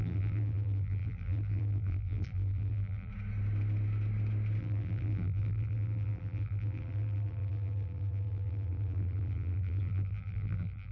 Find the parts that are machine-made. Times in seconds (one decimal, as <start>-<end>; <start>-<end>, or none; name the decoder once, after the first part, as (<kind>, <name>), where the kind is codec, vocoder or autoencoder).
0.0-3.1 (vocoder, BigVGAN v2); 4.6-10.9